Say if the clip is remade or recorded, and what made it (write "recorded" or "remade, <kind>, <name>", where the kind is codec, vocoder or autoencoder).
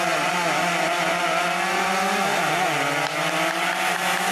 recorded